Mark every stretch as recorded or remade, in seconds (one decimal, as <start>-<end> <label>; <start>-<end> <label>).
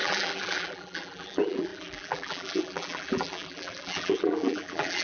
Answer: 0.0-5.0 remade